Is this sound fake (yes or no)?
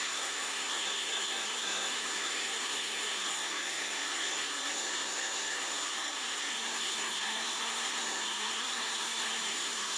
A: yes